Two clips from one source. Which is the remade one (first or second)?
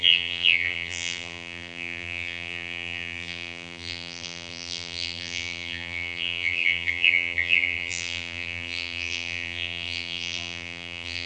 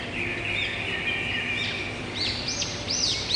first